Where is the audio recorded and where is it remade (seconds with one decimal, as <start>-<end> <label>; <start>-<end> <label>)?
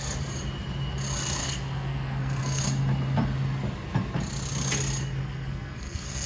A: 0.0-1.4 recorded; 1.4-2.6 remade; 2.6-5.2 recorded; 5.2-6.3 remade